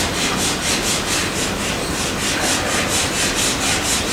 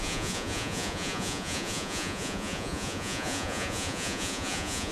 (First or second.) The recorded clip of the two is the first